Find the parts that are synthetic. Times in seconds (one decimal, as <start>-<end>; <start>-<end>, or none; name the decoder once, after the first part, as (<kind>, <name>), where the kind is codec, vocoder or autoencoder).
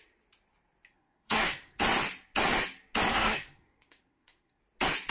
0.9-1.8 (codec, SNAC); 3.1-4.6